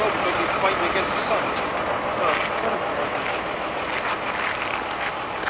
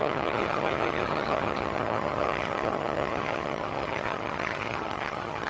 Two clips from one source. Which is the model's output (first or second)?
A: second